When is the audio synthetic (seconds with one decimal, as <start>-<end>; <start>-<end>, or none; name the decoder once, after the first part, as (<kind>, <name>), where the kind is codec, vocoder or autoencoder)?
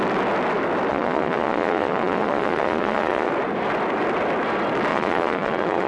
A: 0.9-3.3 (vocoder, Vocos); 4.9-5.9